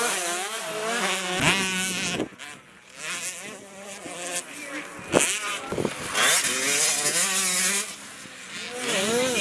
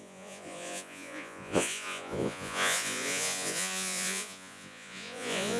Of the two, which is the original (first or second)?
first